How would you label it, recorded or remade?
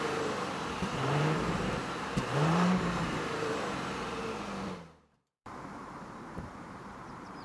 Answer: remade